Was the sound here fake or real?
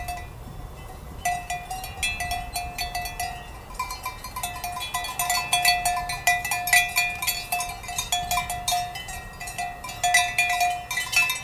real